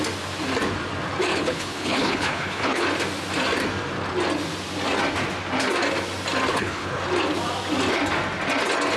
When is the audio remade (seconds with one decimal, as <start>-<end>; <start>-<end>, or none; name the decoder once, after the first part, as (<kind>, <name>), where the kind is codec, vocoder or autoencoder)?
1.3-2.8 (codec, HILCodec); 6.5-7.0